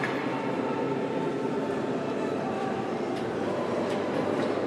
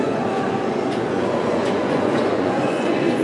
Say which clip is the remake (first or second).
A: second